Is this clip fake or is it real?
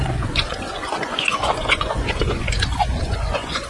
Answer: fake